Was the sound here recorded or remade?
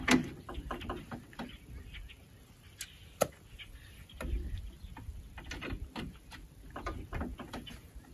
recorded